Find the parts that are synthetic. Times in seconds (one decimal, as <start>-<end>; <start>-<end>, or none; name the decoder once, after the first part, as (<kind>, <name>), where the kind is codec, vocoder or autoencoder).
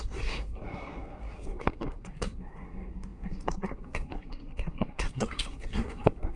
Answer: 0.0-6.4 (codec, SNAC)